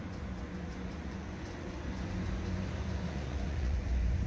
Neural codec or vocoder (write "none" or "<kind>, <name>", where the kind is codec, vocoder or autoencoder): vocoder, Vocos